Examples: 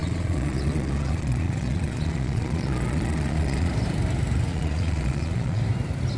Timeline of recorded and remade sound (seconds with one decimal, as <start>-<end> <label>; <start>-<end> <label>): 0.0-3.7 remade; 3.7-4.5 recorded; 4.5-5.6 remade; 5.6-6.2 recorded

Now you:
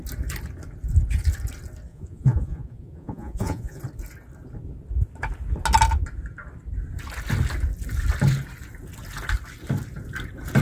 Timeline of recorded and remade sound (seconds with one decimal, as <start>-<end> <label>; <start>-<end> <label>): 0.0-1.9 recorded; 1.9-3.8 remade; 3.8-10.6 recorded

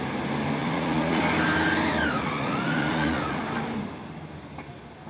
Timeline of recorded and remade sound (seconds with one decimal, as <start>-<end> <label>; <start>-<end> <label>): 0.0-0.6 recorded; 0.6-1.2 remade; 1.2-2.2 recorded; 2.2-3.4 remade; 3.4-5.1 recorded

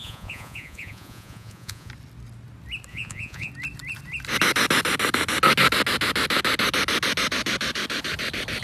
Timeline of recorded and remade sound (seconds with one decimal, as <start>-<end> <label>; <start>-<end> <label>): 0.0-1.9 remade; 1.9-2.9 recorded; 2.9-3.5 remade; 3.5-8.6 recorded